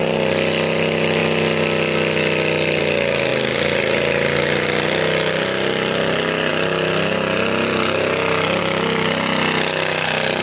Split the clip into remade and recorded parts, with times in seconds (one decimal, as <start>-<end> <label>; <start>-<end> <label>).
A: 0.0-10.4 recorded